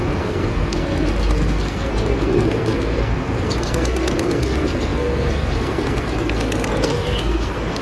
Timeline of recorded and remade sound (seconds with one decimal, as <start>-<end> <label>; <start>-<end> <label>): 0.0-7.8 remade